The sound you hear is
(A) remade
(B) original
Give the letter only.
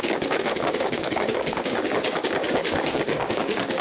A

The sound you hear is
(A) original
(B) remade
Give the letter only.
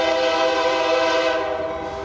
A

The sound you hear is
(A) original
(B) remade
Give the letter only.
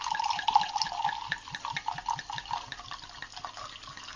A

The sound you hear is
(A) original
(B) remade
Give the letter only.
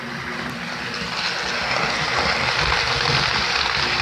A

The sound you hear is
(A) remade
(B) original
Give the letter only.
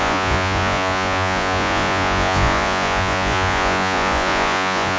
A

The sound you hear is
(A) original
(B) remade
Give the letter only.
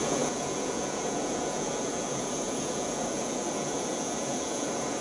B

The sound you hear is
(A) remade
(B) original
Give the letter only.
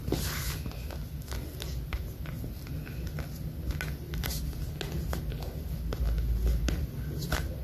B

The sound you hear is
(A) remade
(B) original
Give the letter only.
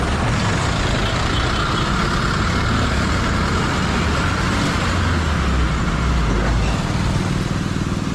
B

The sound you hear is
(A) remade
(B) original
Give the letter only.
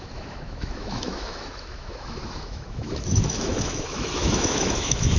A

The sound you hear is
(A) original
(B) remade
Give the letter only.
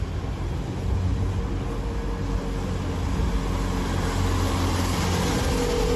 A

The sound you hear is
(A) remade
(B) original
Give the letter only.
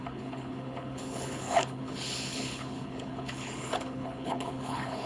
A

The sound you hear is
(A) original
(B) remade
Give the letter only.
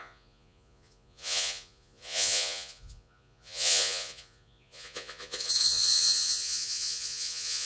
B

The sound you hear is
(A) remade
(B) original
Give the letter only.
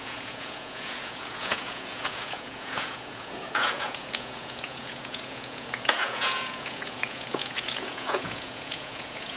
A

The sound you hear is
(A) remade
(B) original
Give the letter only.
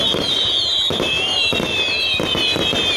B